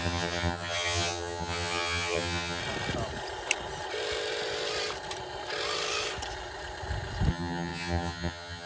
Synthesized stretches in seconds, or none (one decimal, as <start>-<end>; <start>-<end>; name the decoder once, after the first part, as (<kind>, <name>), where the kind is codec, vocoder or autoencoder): 0.0-2.6 (vocoder, HiFi-GAN); 7.3-8.7